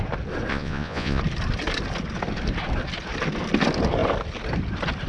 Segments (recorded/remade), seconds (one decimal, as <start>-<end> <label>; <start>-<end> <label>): 0.0-0.5 recorded; 0.5-1.2 remade; 1.2-5.1 recorded